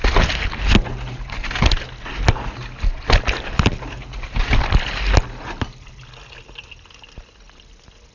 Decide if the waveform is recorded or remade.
recorded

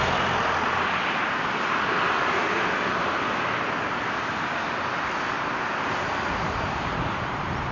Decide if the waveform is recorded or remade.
recorded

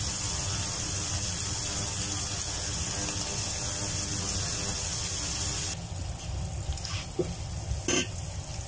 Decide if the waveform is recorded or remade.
recorded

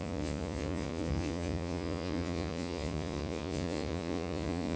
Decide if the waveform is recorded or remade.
remade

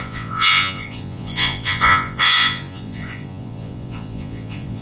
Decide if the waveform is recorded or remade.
remade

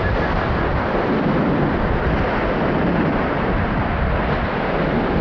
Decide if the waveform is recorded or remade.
recorded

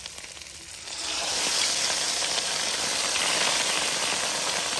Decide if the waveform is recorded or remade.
recorded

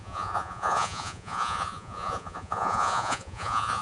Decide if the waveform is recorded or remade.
remade